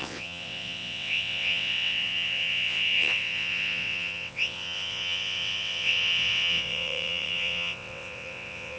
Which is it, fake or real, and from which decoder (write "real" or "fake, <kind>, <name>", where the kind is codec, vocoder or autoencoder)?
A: fake, vocoder, WaveNeXt